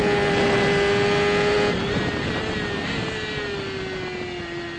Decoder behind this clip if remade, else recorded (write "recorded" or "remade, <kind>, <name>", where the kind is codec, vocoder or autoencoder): recorded